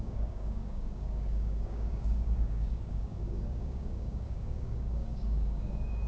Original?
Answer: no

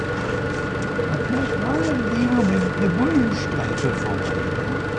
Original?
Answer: yes